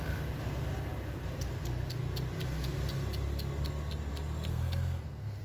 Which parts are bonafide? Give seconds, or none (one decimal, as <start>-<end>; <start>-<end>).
0.0-4.5